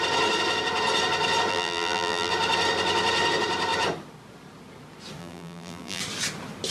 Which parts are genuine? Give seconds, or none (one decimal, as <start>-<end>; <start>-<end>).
0.0-1.5; 2.3-5.2; 6.0-6.7